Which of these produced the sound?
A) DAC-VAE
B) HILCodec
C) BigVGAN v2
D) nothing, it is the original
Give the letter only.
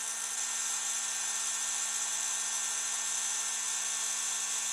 D